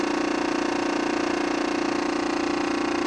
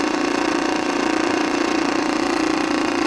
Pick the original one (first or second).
first